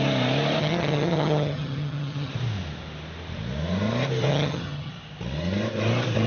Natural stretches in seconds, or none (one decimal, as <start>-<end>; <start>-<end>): 0.0-0.6; 2.3-4.3; 4.9-6.3